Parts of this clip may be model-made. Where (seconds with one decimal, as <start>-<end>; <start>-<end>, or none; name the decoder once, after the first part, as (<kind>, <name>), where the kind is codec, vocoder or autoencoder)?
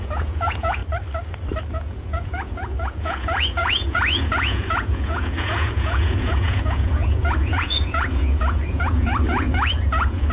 0.0-0.8 (vocoder, Vocos); 1.7-10.3